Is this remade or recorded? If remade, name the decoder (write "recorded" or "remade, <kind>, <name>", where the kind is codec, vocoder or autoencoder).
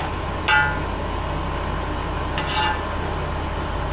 recorded